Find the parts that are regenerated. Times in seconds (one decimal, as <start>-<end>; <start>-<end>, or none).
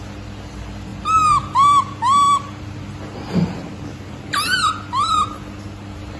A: none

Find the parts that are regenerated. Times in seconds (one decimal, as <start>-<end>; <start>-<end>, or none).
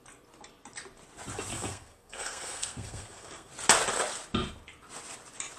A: 1.5-3.5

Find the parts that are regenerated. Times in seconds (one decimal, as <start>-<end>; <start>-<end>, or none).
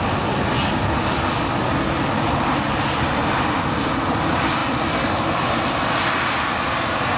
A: none